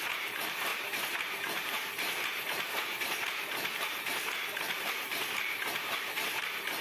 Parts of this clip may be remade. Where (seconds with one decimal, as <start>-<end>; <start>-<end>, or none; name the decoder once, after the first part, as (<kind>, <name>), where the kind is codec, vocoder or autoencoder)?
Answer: 0.0-6.8 (vocoder, BigVGAN v2)